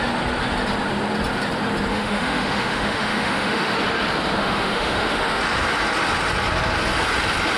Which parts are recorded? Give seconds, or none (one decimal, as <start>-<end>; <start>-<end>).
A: 0.0-1.9; 3.8-4.4; 5.4-7.6